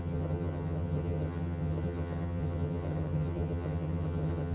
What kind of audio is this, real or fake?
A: fake